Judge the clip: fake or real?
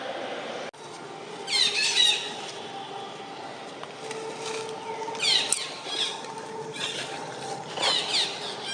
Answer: real